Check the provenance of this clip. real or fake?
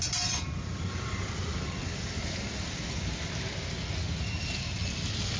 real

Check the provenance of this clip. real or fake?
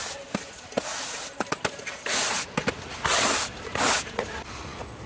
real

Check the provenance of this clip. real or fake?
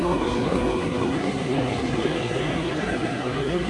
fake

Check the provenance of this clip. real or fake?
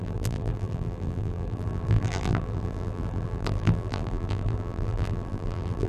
fake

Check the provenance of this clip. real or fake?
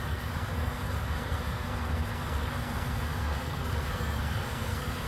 fake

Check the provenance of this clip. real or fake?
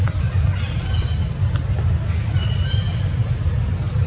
fake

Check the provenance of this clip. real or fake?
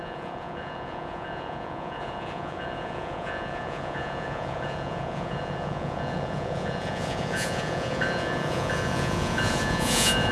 fake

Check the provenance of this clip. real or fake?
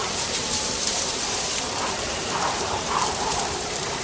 fake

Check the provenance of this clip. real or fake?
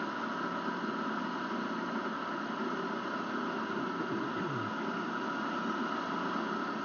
real